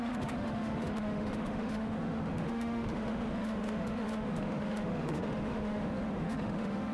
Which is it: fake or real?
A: fake